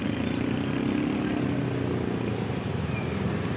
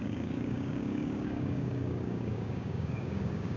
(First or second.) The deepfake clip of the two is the second